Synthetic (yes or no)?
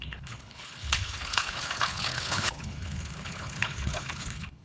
yes